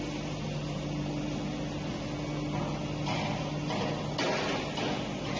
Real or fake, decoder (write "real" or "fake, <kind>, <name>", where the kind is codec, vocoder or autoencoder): real